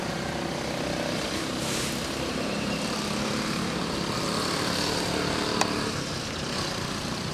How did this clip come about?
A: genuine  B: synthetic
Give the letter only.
B